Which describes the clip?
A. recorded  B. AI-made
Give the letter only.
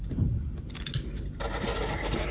A